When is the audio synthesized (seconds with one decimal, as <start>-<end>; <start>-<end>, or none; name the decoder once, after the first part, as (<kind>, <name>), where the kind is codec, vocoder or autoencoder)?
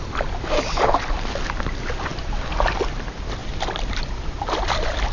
none